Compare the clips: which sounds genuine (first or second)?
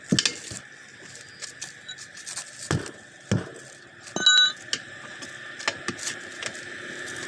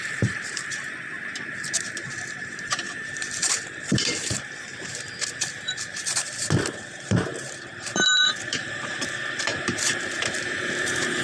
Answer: first